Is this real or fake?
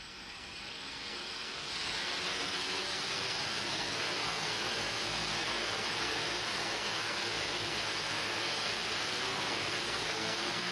fake